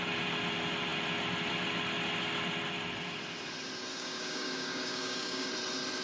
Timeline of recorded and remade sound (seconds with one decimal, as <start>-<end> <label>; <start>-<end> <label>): 0.0-3.9 recorded; 3.9-5.5 remade; 5.5-6.0 recorded